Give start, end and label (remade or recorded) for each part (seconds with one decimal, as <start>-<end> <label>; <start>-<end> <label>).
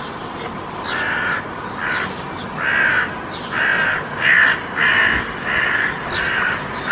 0.0-6.9 recorded